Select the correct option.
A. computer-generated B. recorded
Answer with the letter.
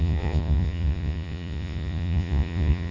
A